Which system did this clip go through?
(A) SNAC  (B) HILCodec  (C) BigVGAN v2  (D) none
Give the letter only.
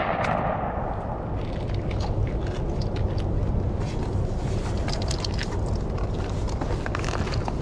D